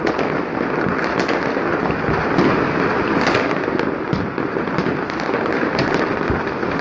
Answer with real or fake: real